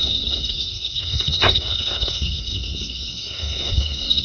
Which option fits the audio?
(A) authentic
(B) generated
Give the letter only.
B